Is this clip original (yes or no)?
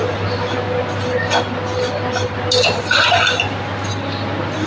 yes